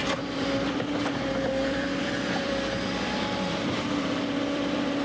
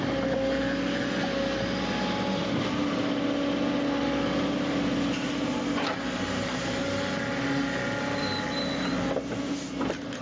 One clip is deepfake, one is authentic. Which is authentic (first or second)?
second